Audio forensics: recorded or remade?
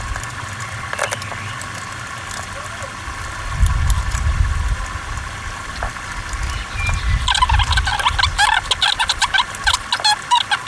recorded